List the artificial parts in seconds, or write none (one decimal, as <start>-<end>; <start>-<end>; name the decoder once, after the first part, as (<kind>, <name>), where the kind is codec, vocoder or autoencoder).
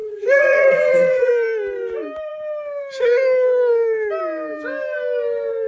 0.0-1.3 (vocoder, Vocos)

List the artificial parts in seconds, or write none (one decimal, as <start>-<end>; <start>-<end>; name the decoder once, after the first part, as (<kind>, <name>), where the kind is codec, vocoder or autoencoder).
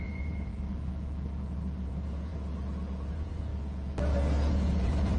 0.0-0.5 (vocoder, Vocos); 1.8-2.3; 3.1-3.5; 4.5-5.2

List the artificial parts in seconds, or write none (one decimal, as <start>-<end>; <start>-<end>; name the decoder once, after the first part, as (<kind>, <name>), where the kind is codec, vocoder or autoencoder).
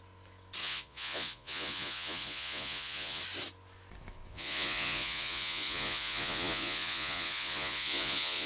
0.6-3.2 (vocoder, Vocos); 4.3-8.5